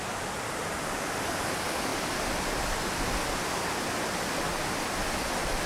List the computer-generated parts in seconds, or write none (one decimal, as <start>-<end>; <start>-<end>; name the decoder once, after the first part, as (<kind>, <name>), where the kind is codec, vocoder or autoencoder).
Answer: none